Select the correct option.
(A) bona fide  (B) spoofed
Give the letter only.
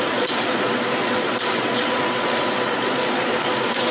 B